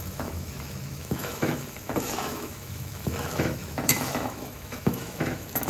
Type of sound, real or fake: fake